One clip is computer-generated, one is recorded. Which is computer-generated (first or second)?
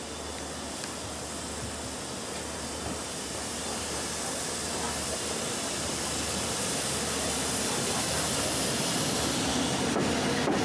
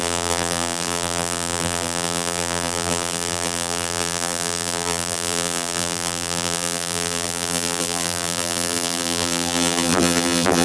second